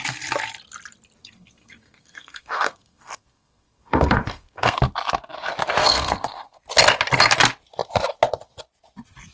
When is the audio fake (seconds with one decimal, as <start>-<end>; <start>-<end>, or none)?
1.2-4.8; 5.8-6.6